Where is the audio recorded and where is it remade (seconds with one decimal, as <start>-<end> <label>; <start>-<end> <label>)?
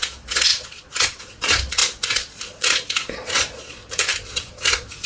0.0-3.8 remade; 3.8-4.3 recorded; 4.3-5.1 remade